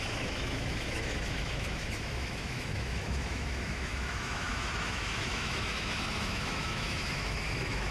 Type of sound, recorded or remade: remade